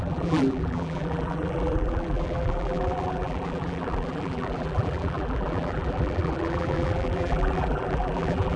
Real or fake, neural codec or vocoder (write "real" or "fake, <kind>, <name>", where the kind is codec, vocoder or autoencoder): fake, vocoder, BigVGAN v2